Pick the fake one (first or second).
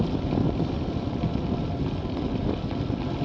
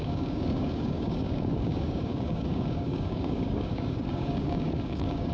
second